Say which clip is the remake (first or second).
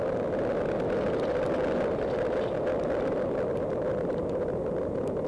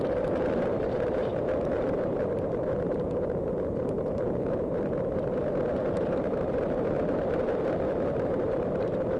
second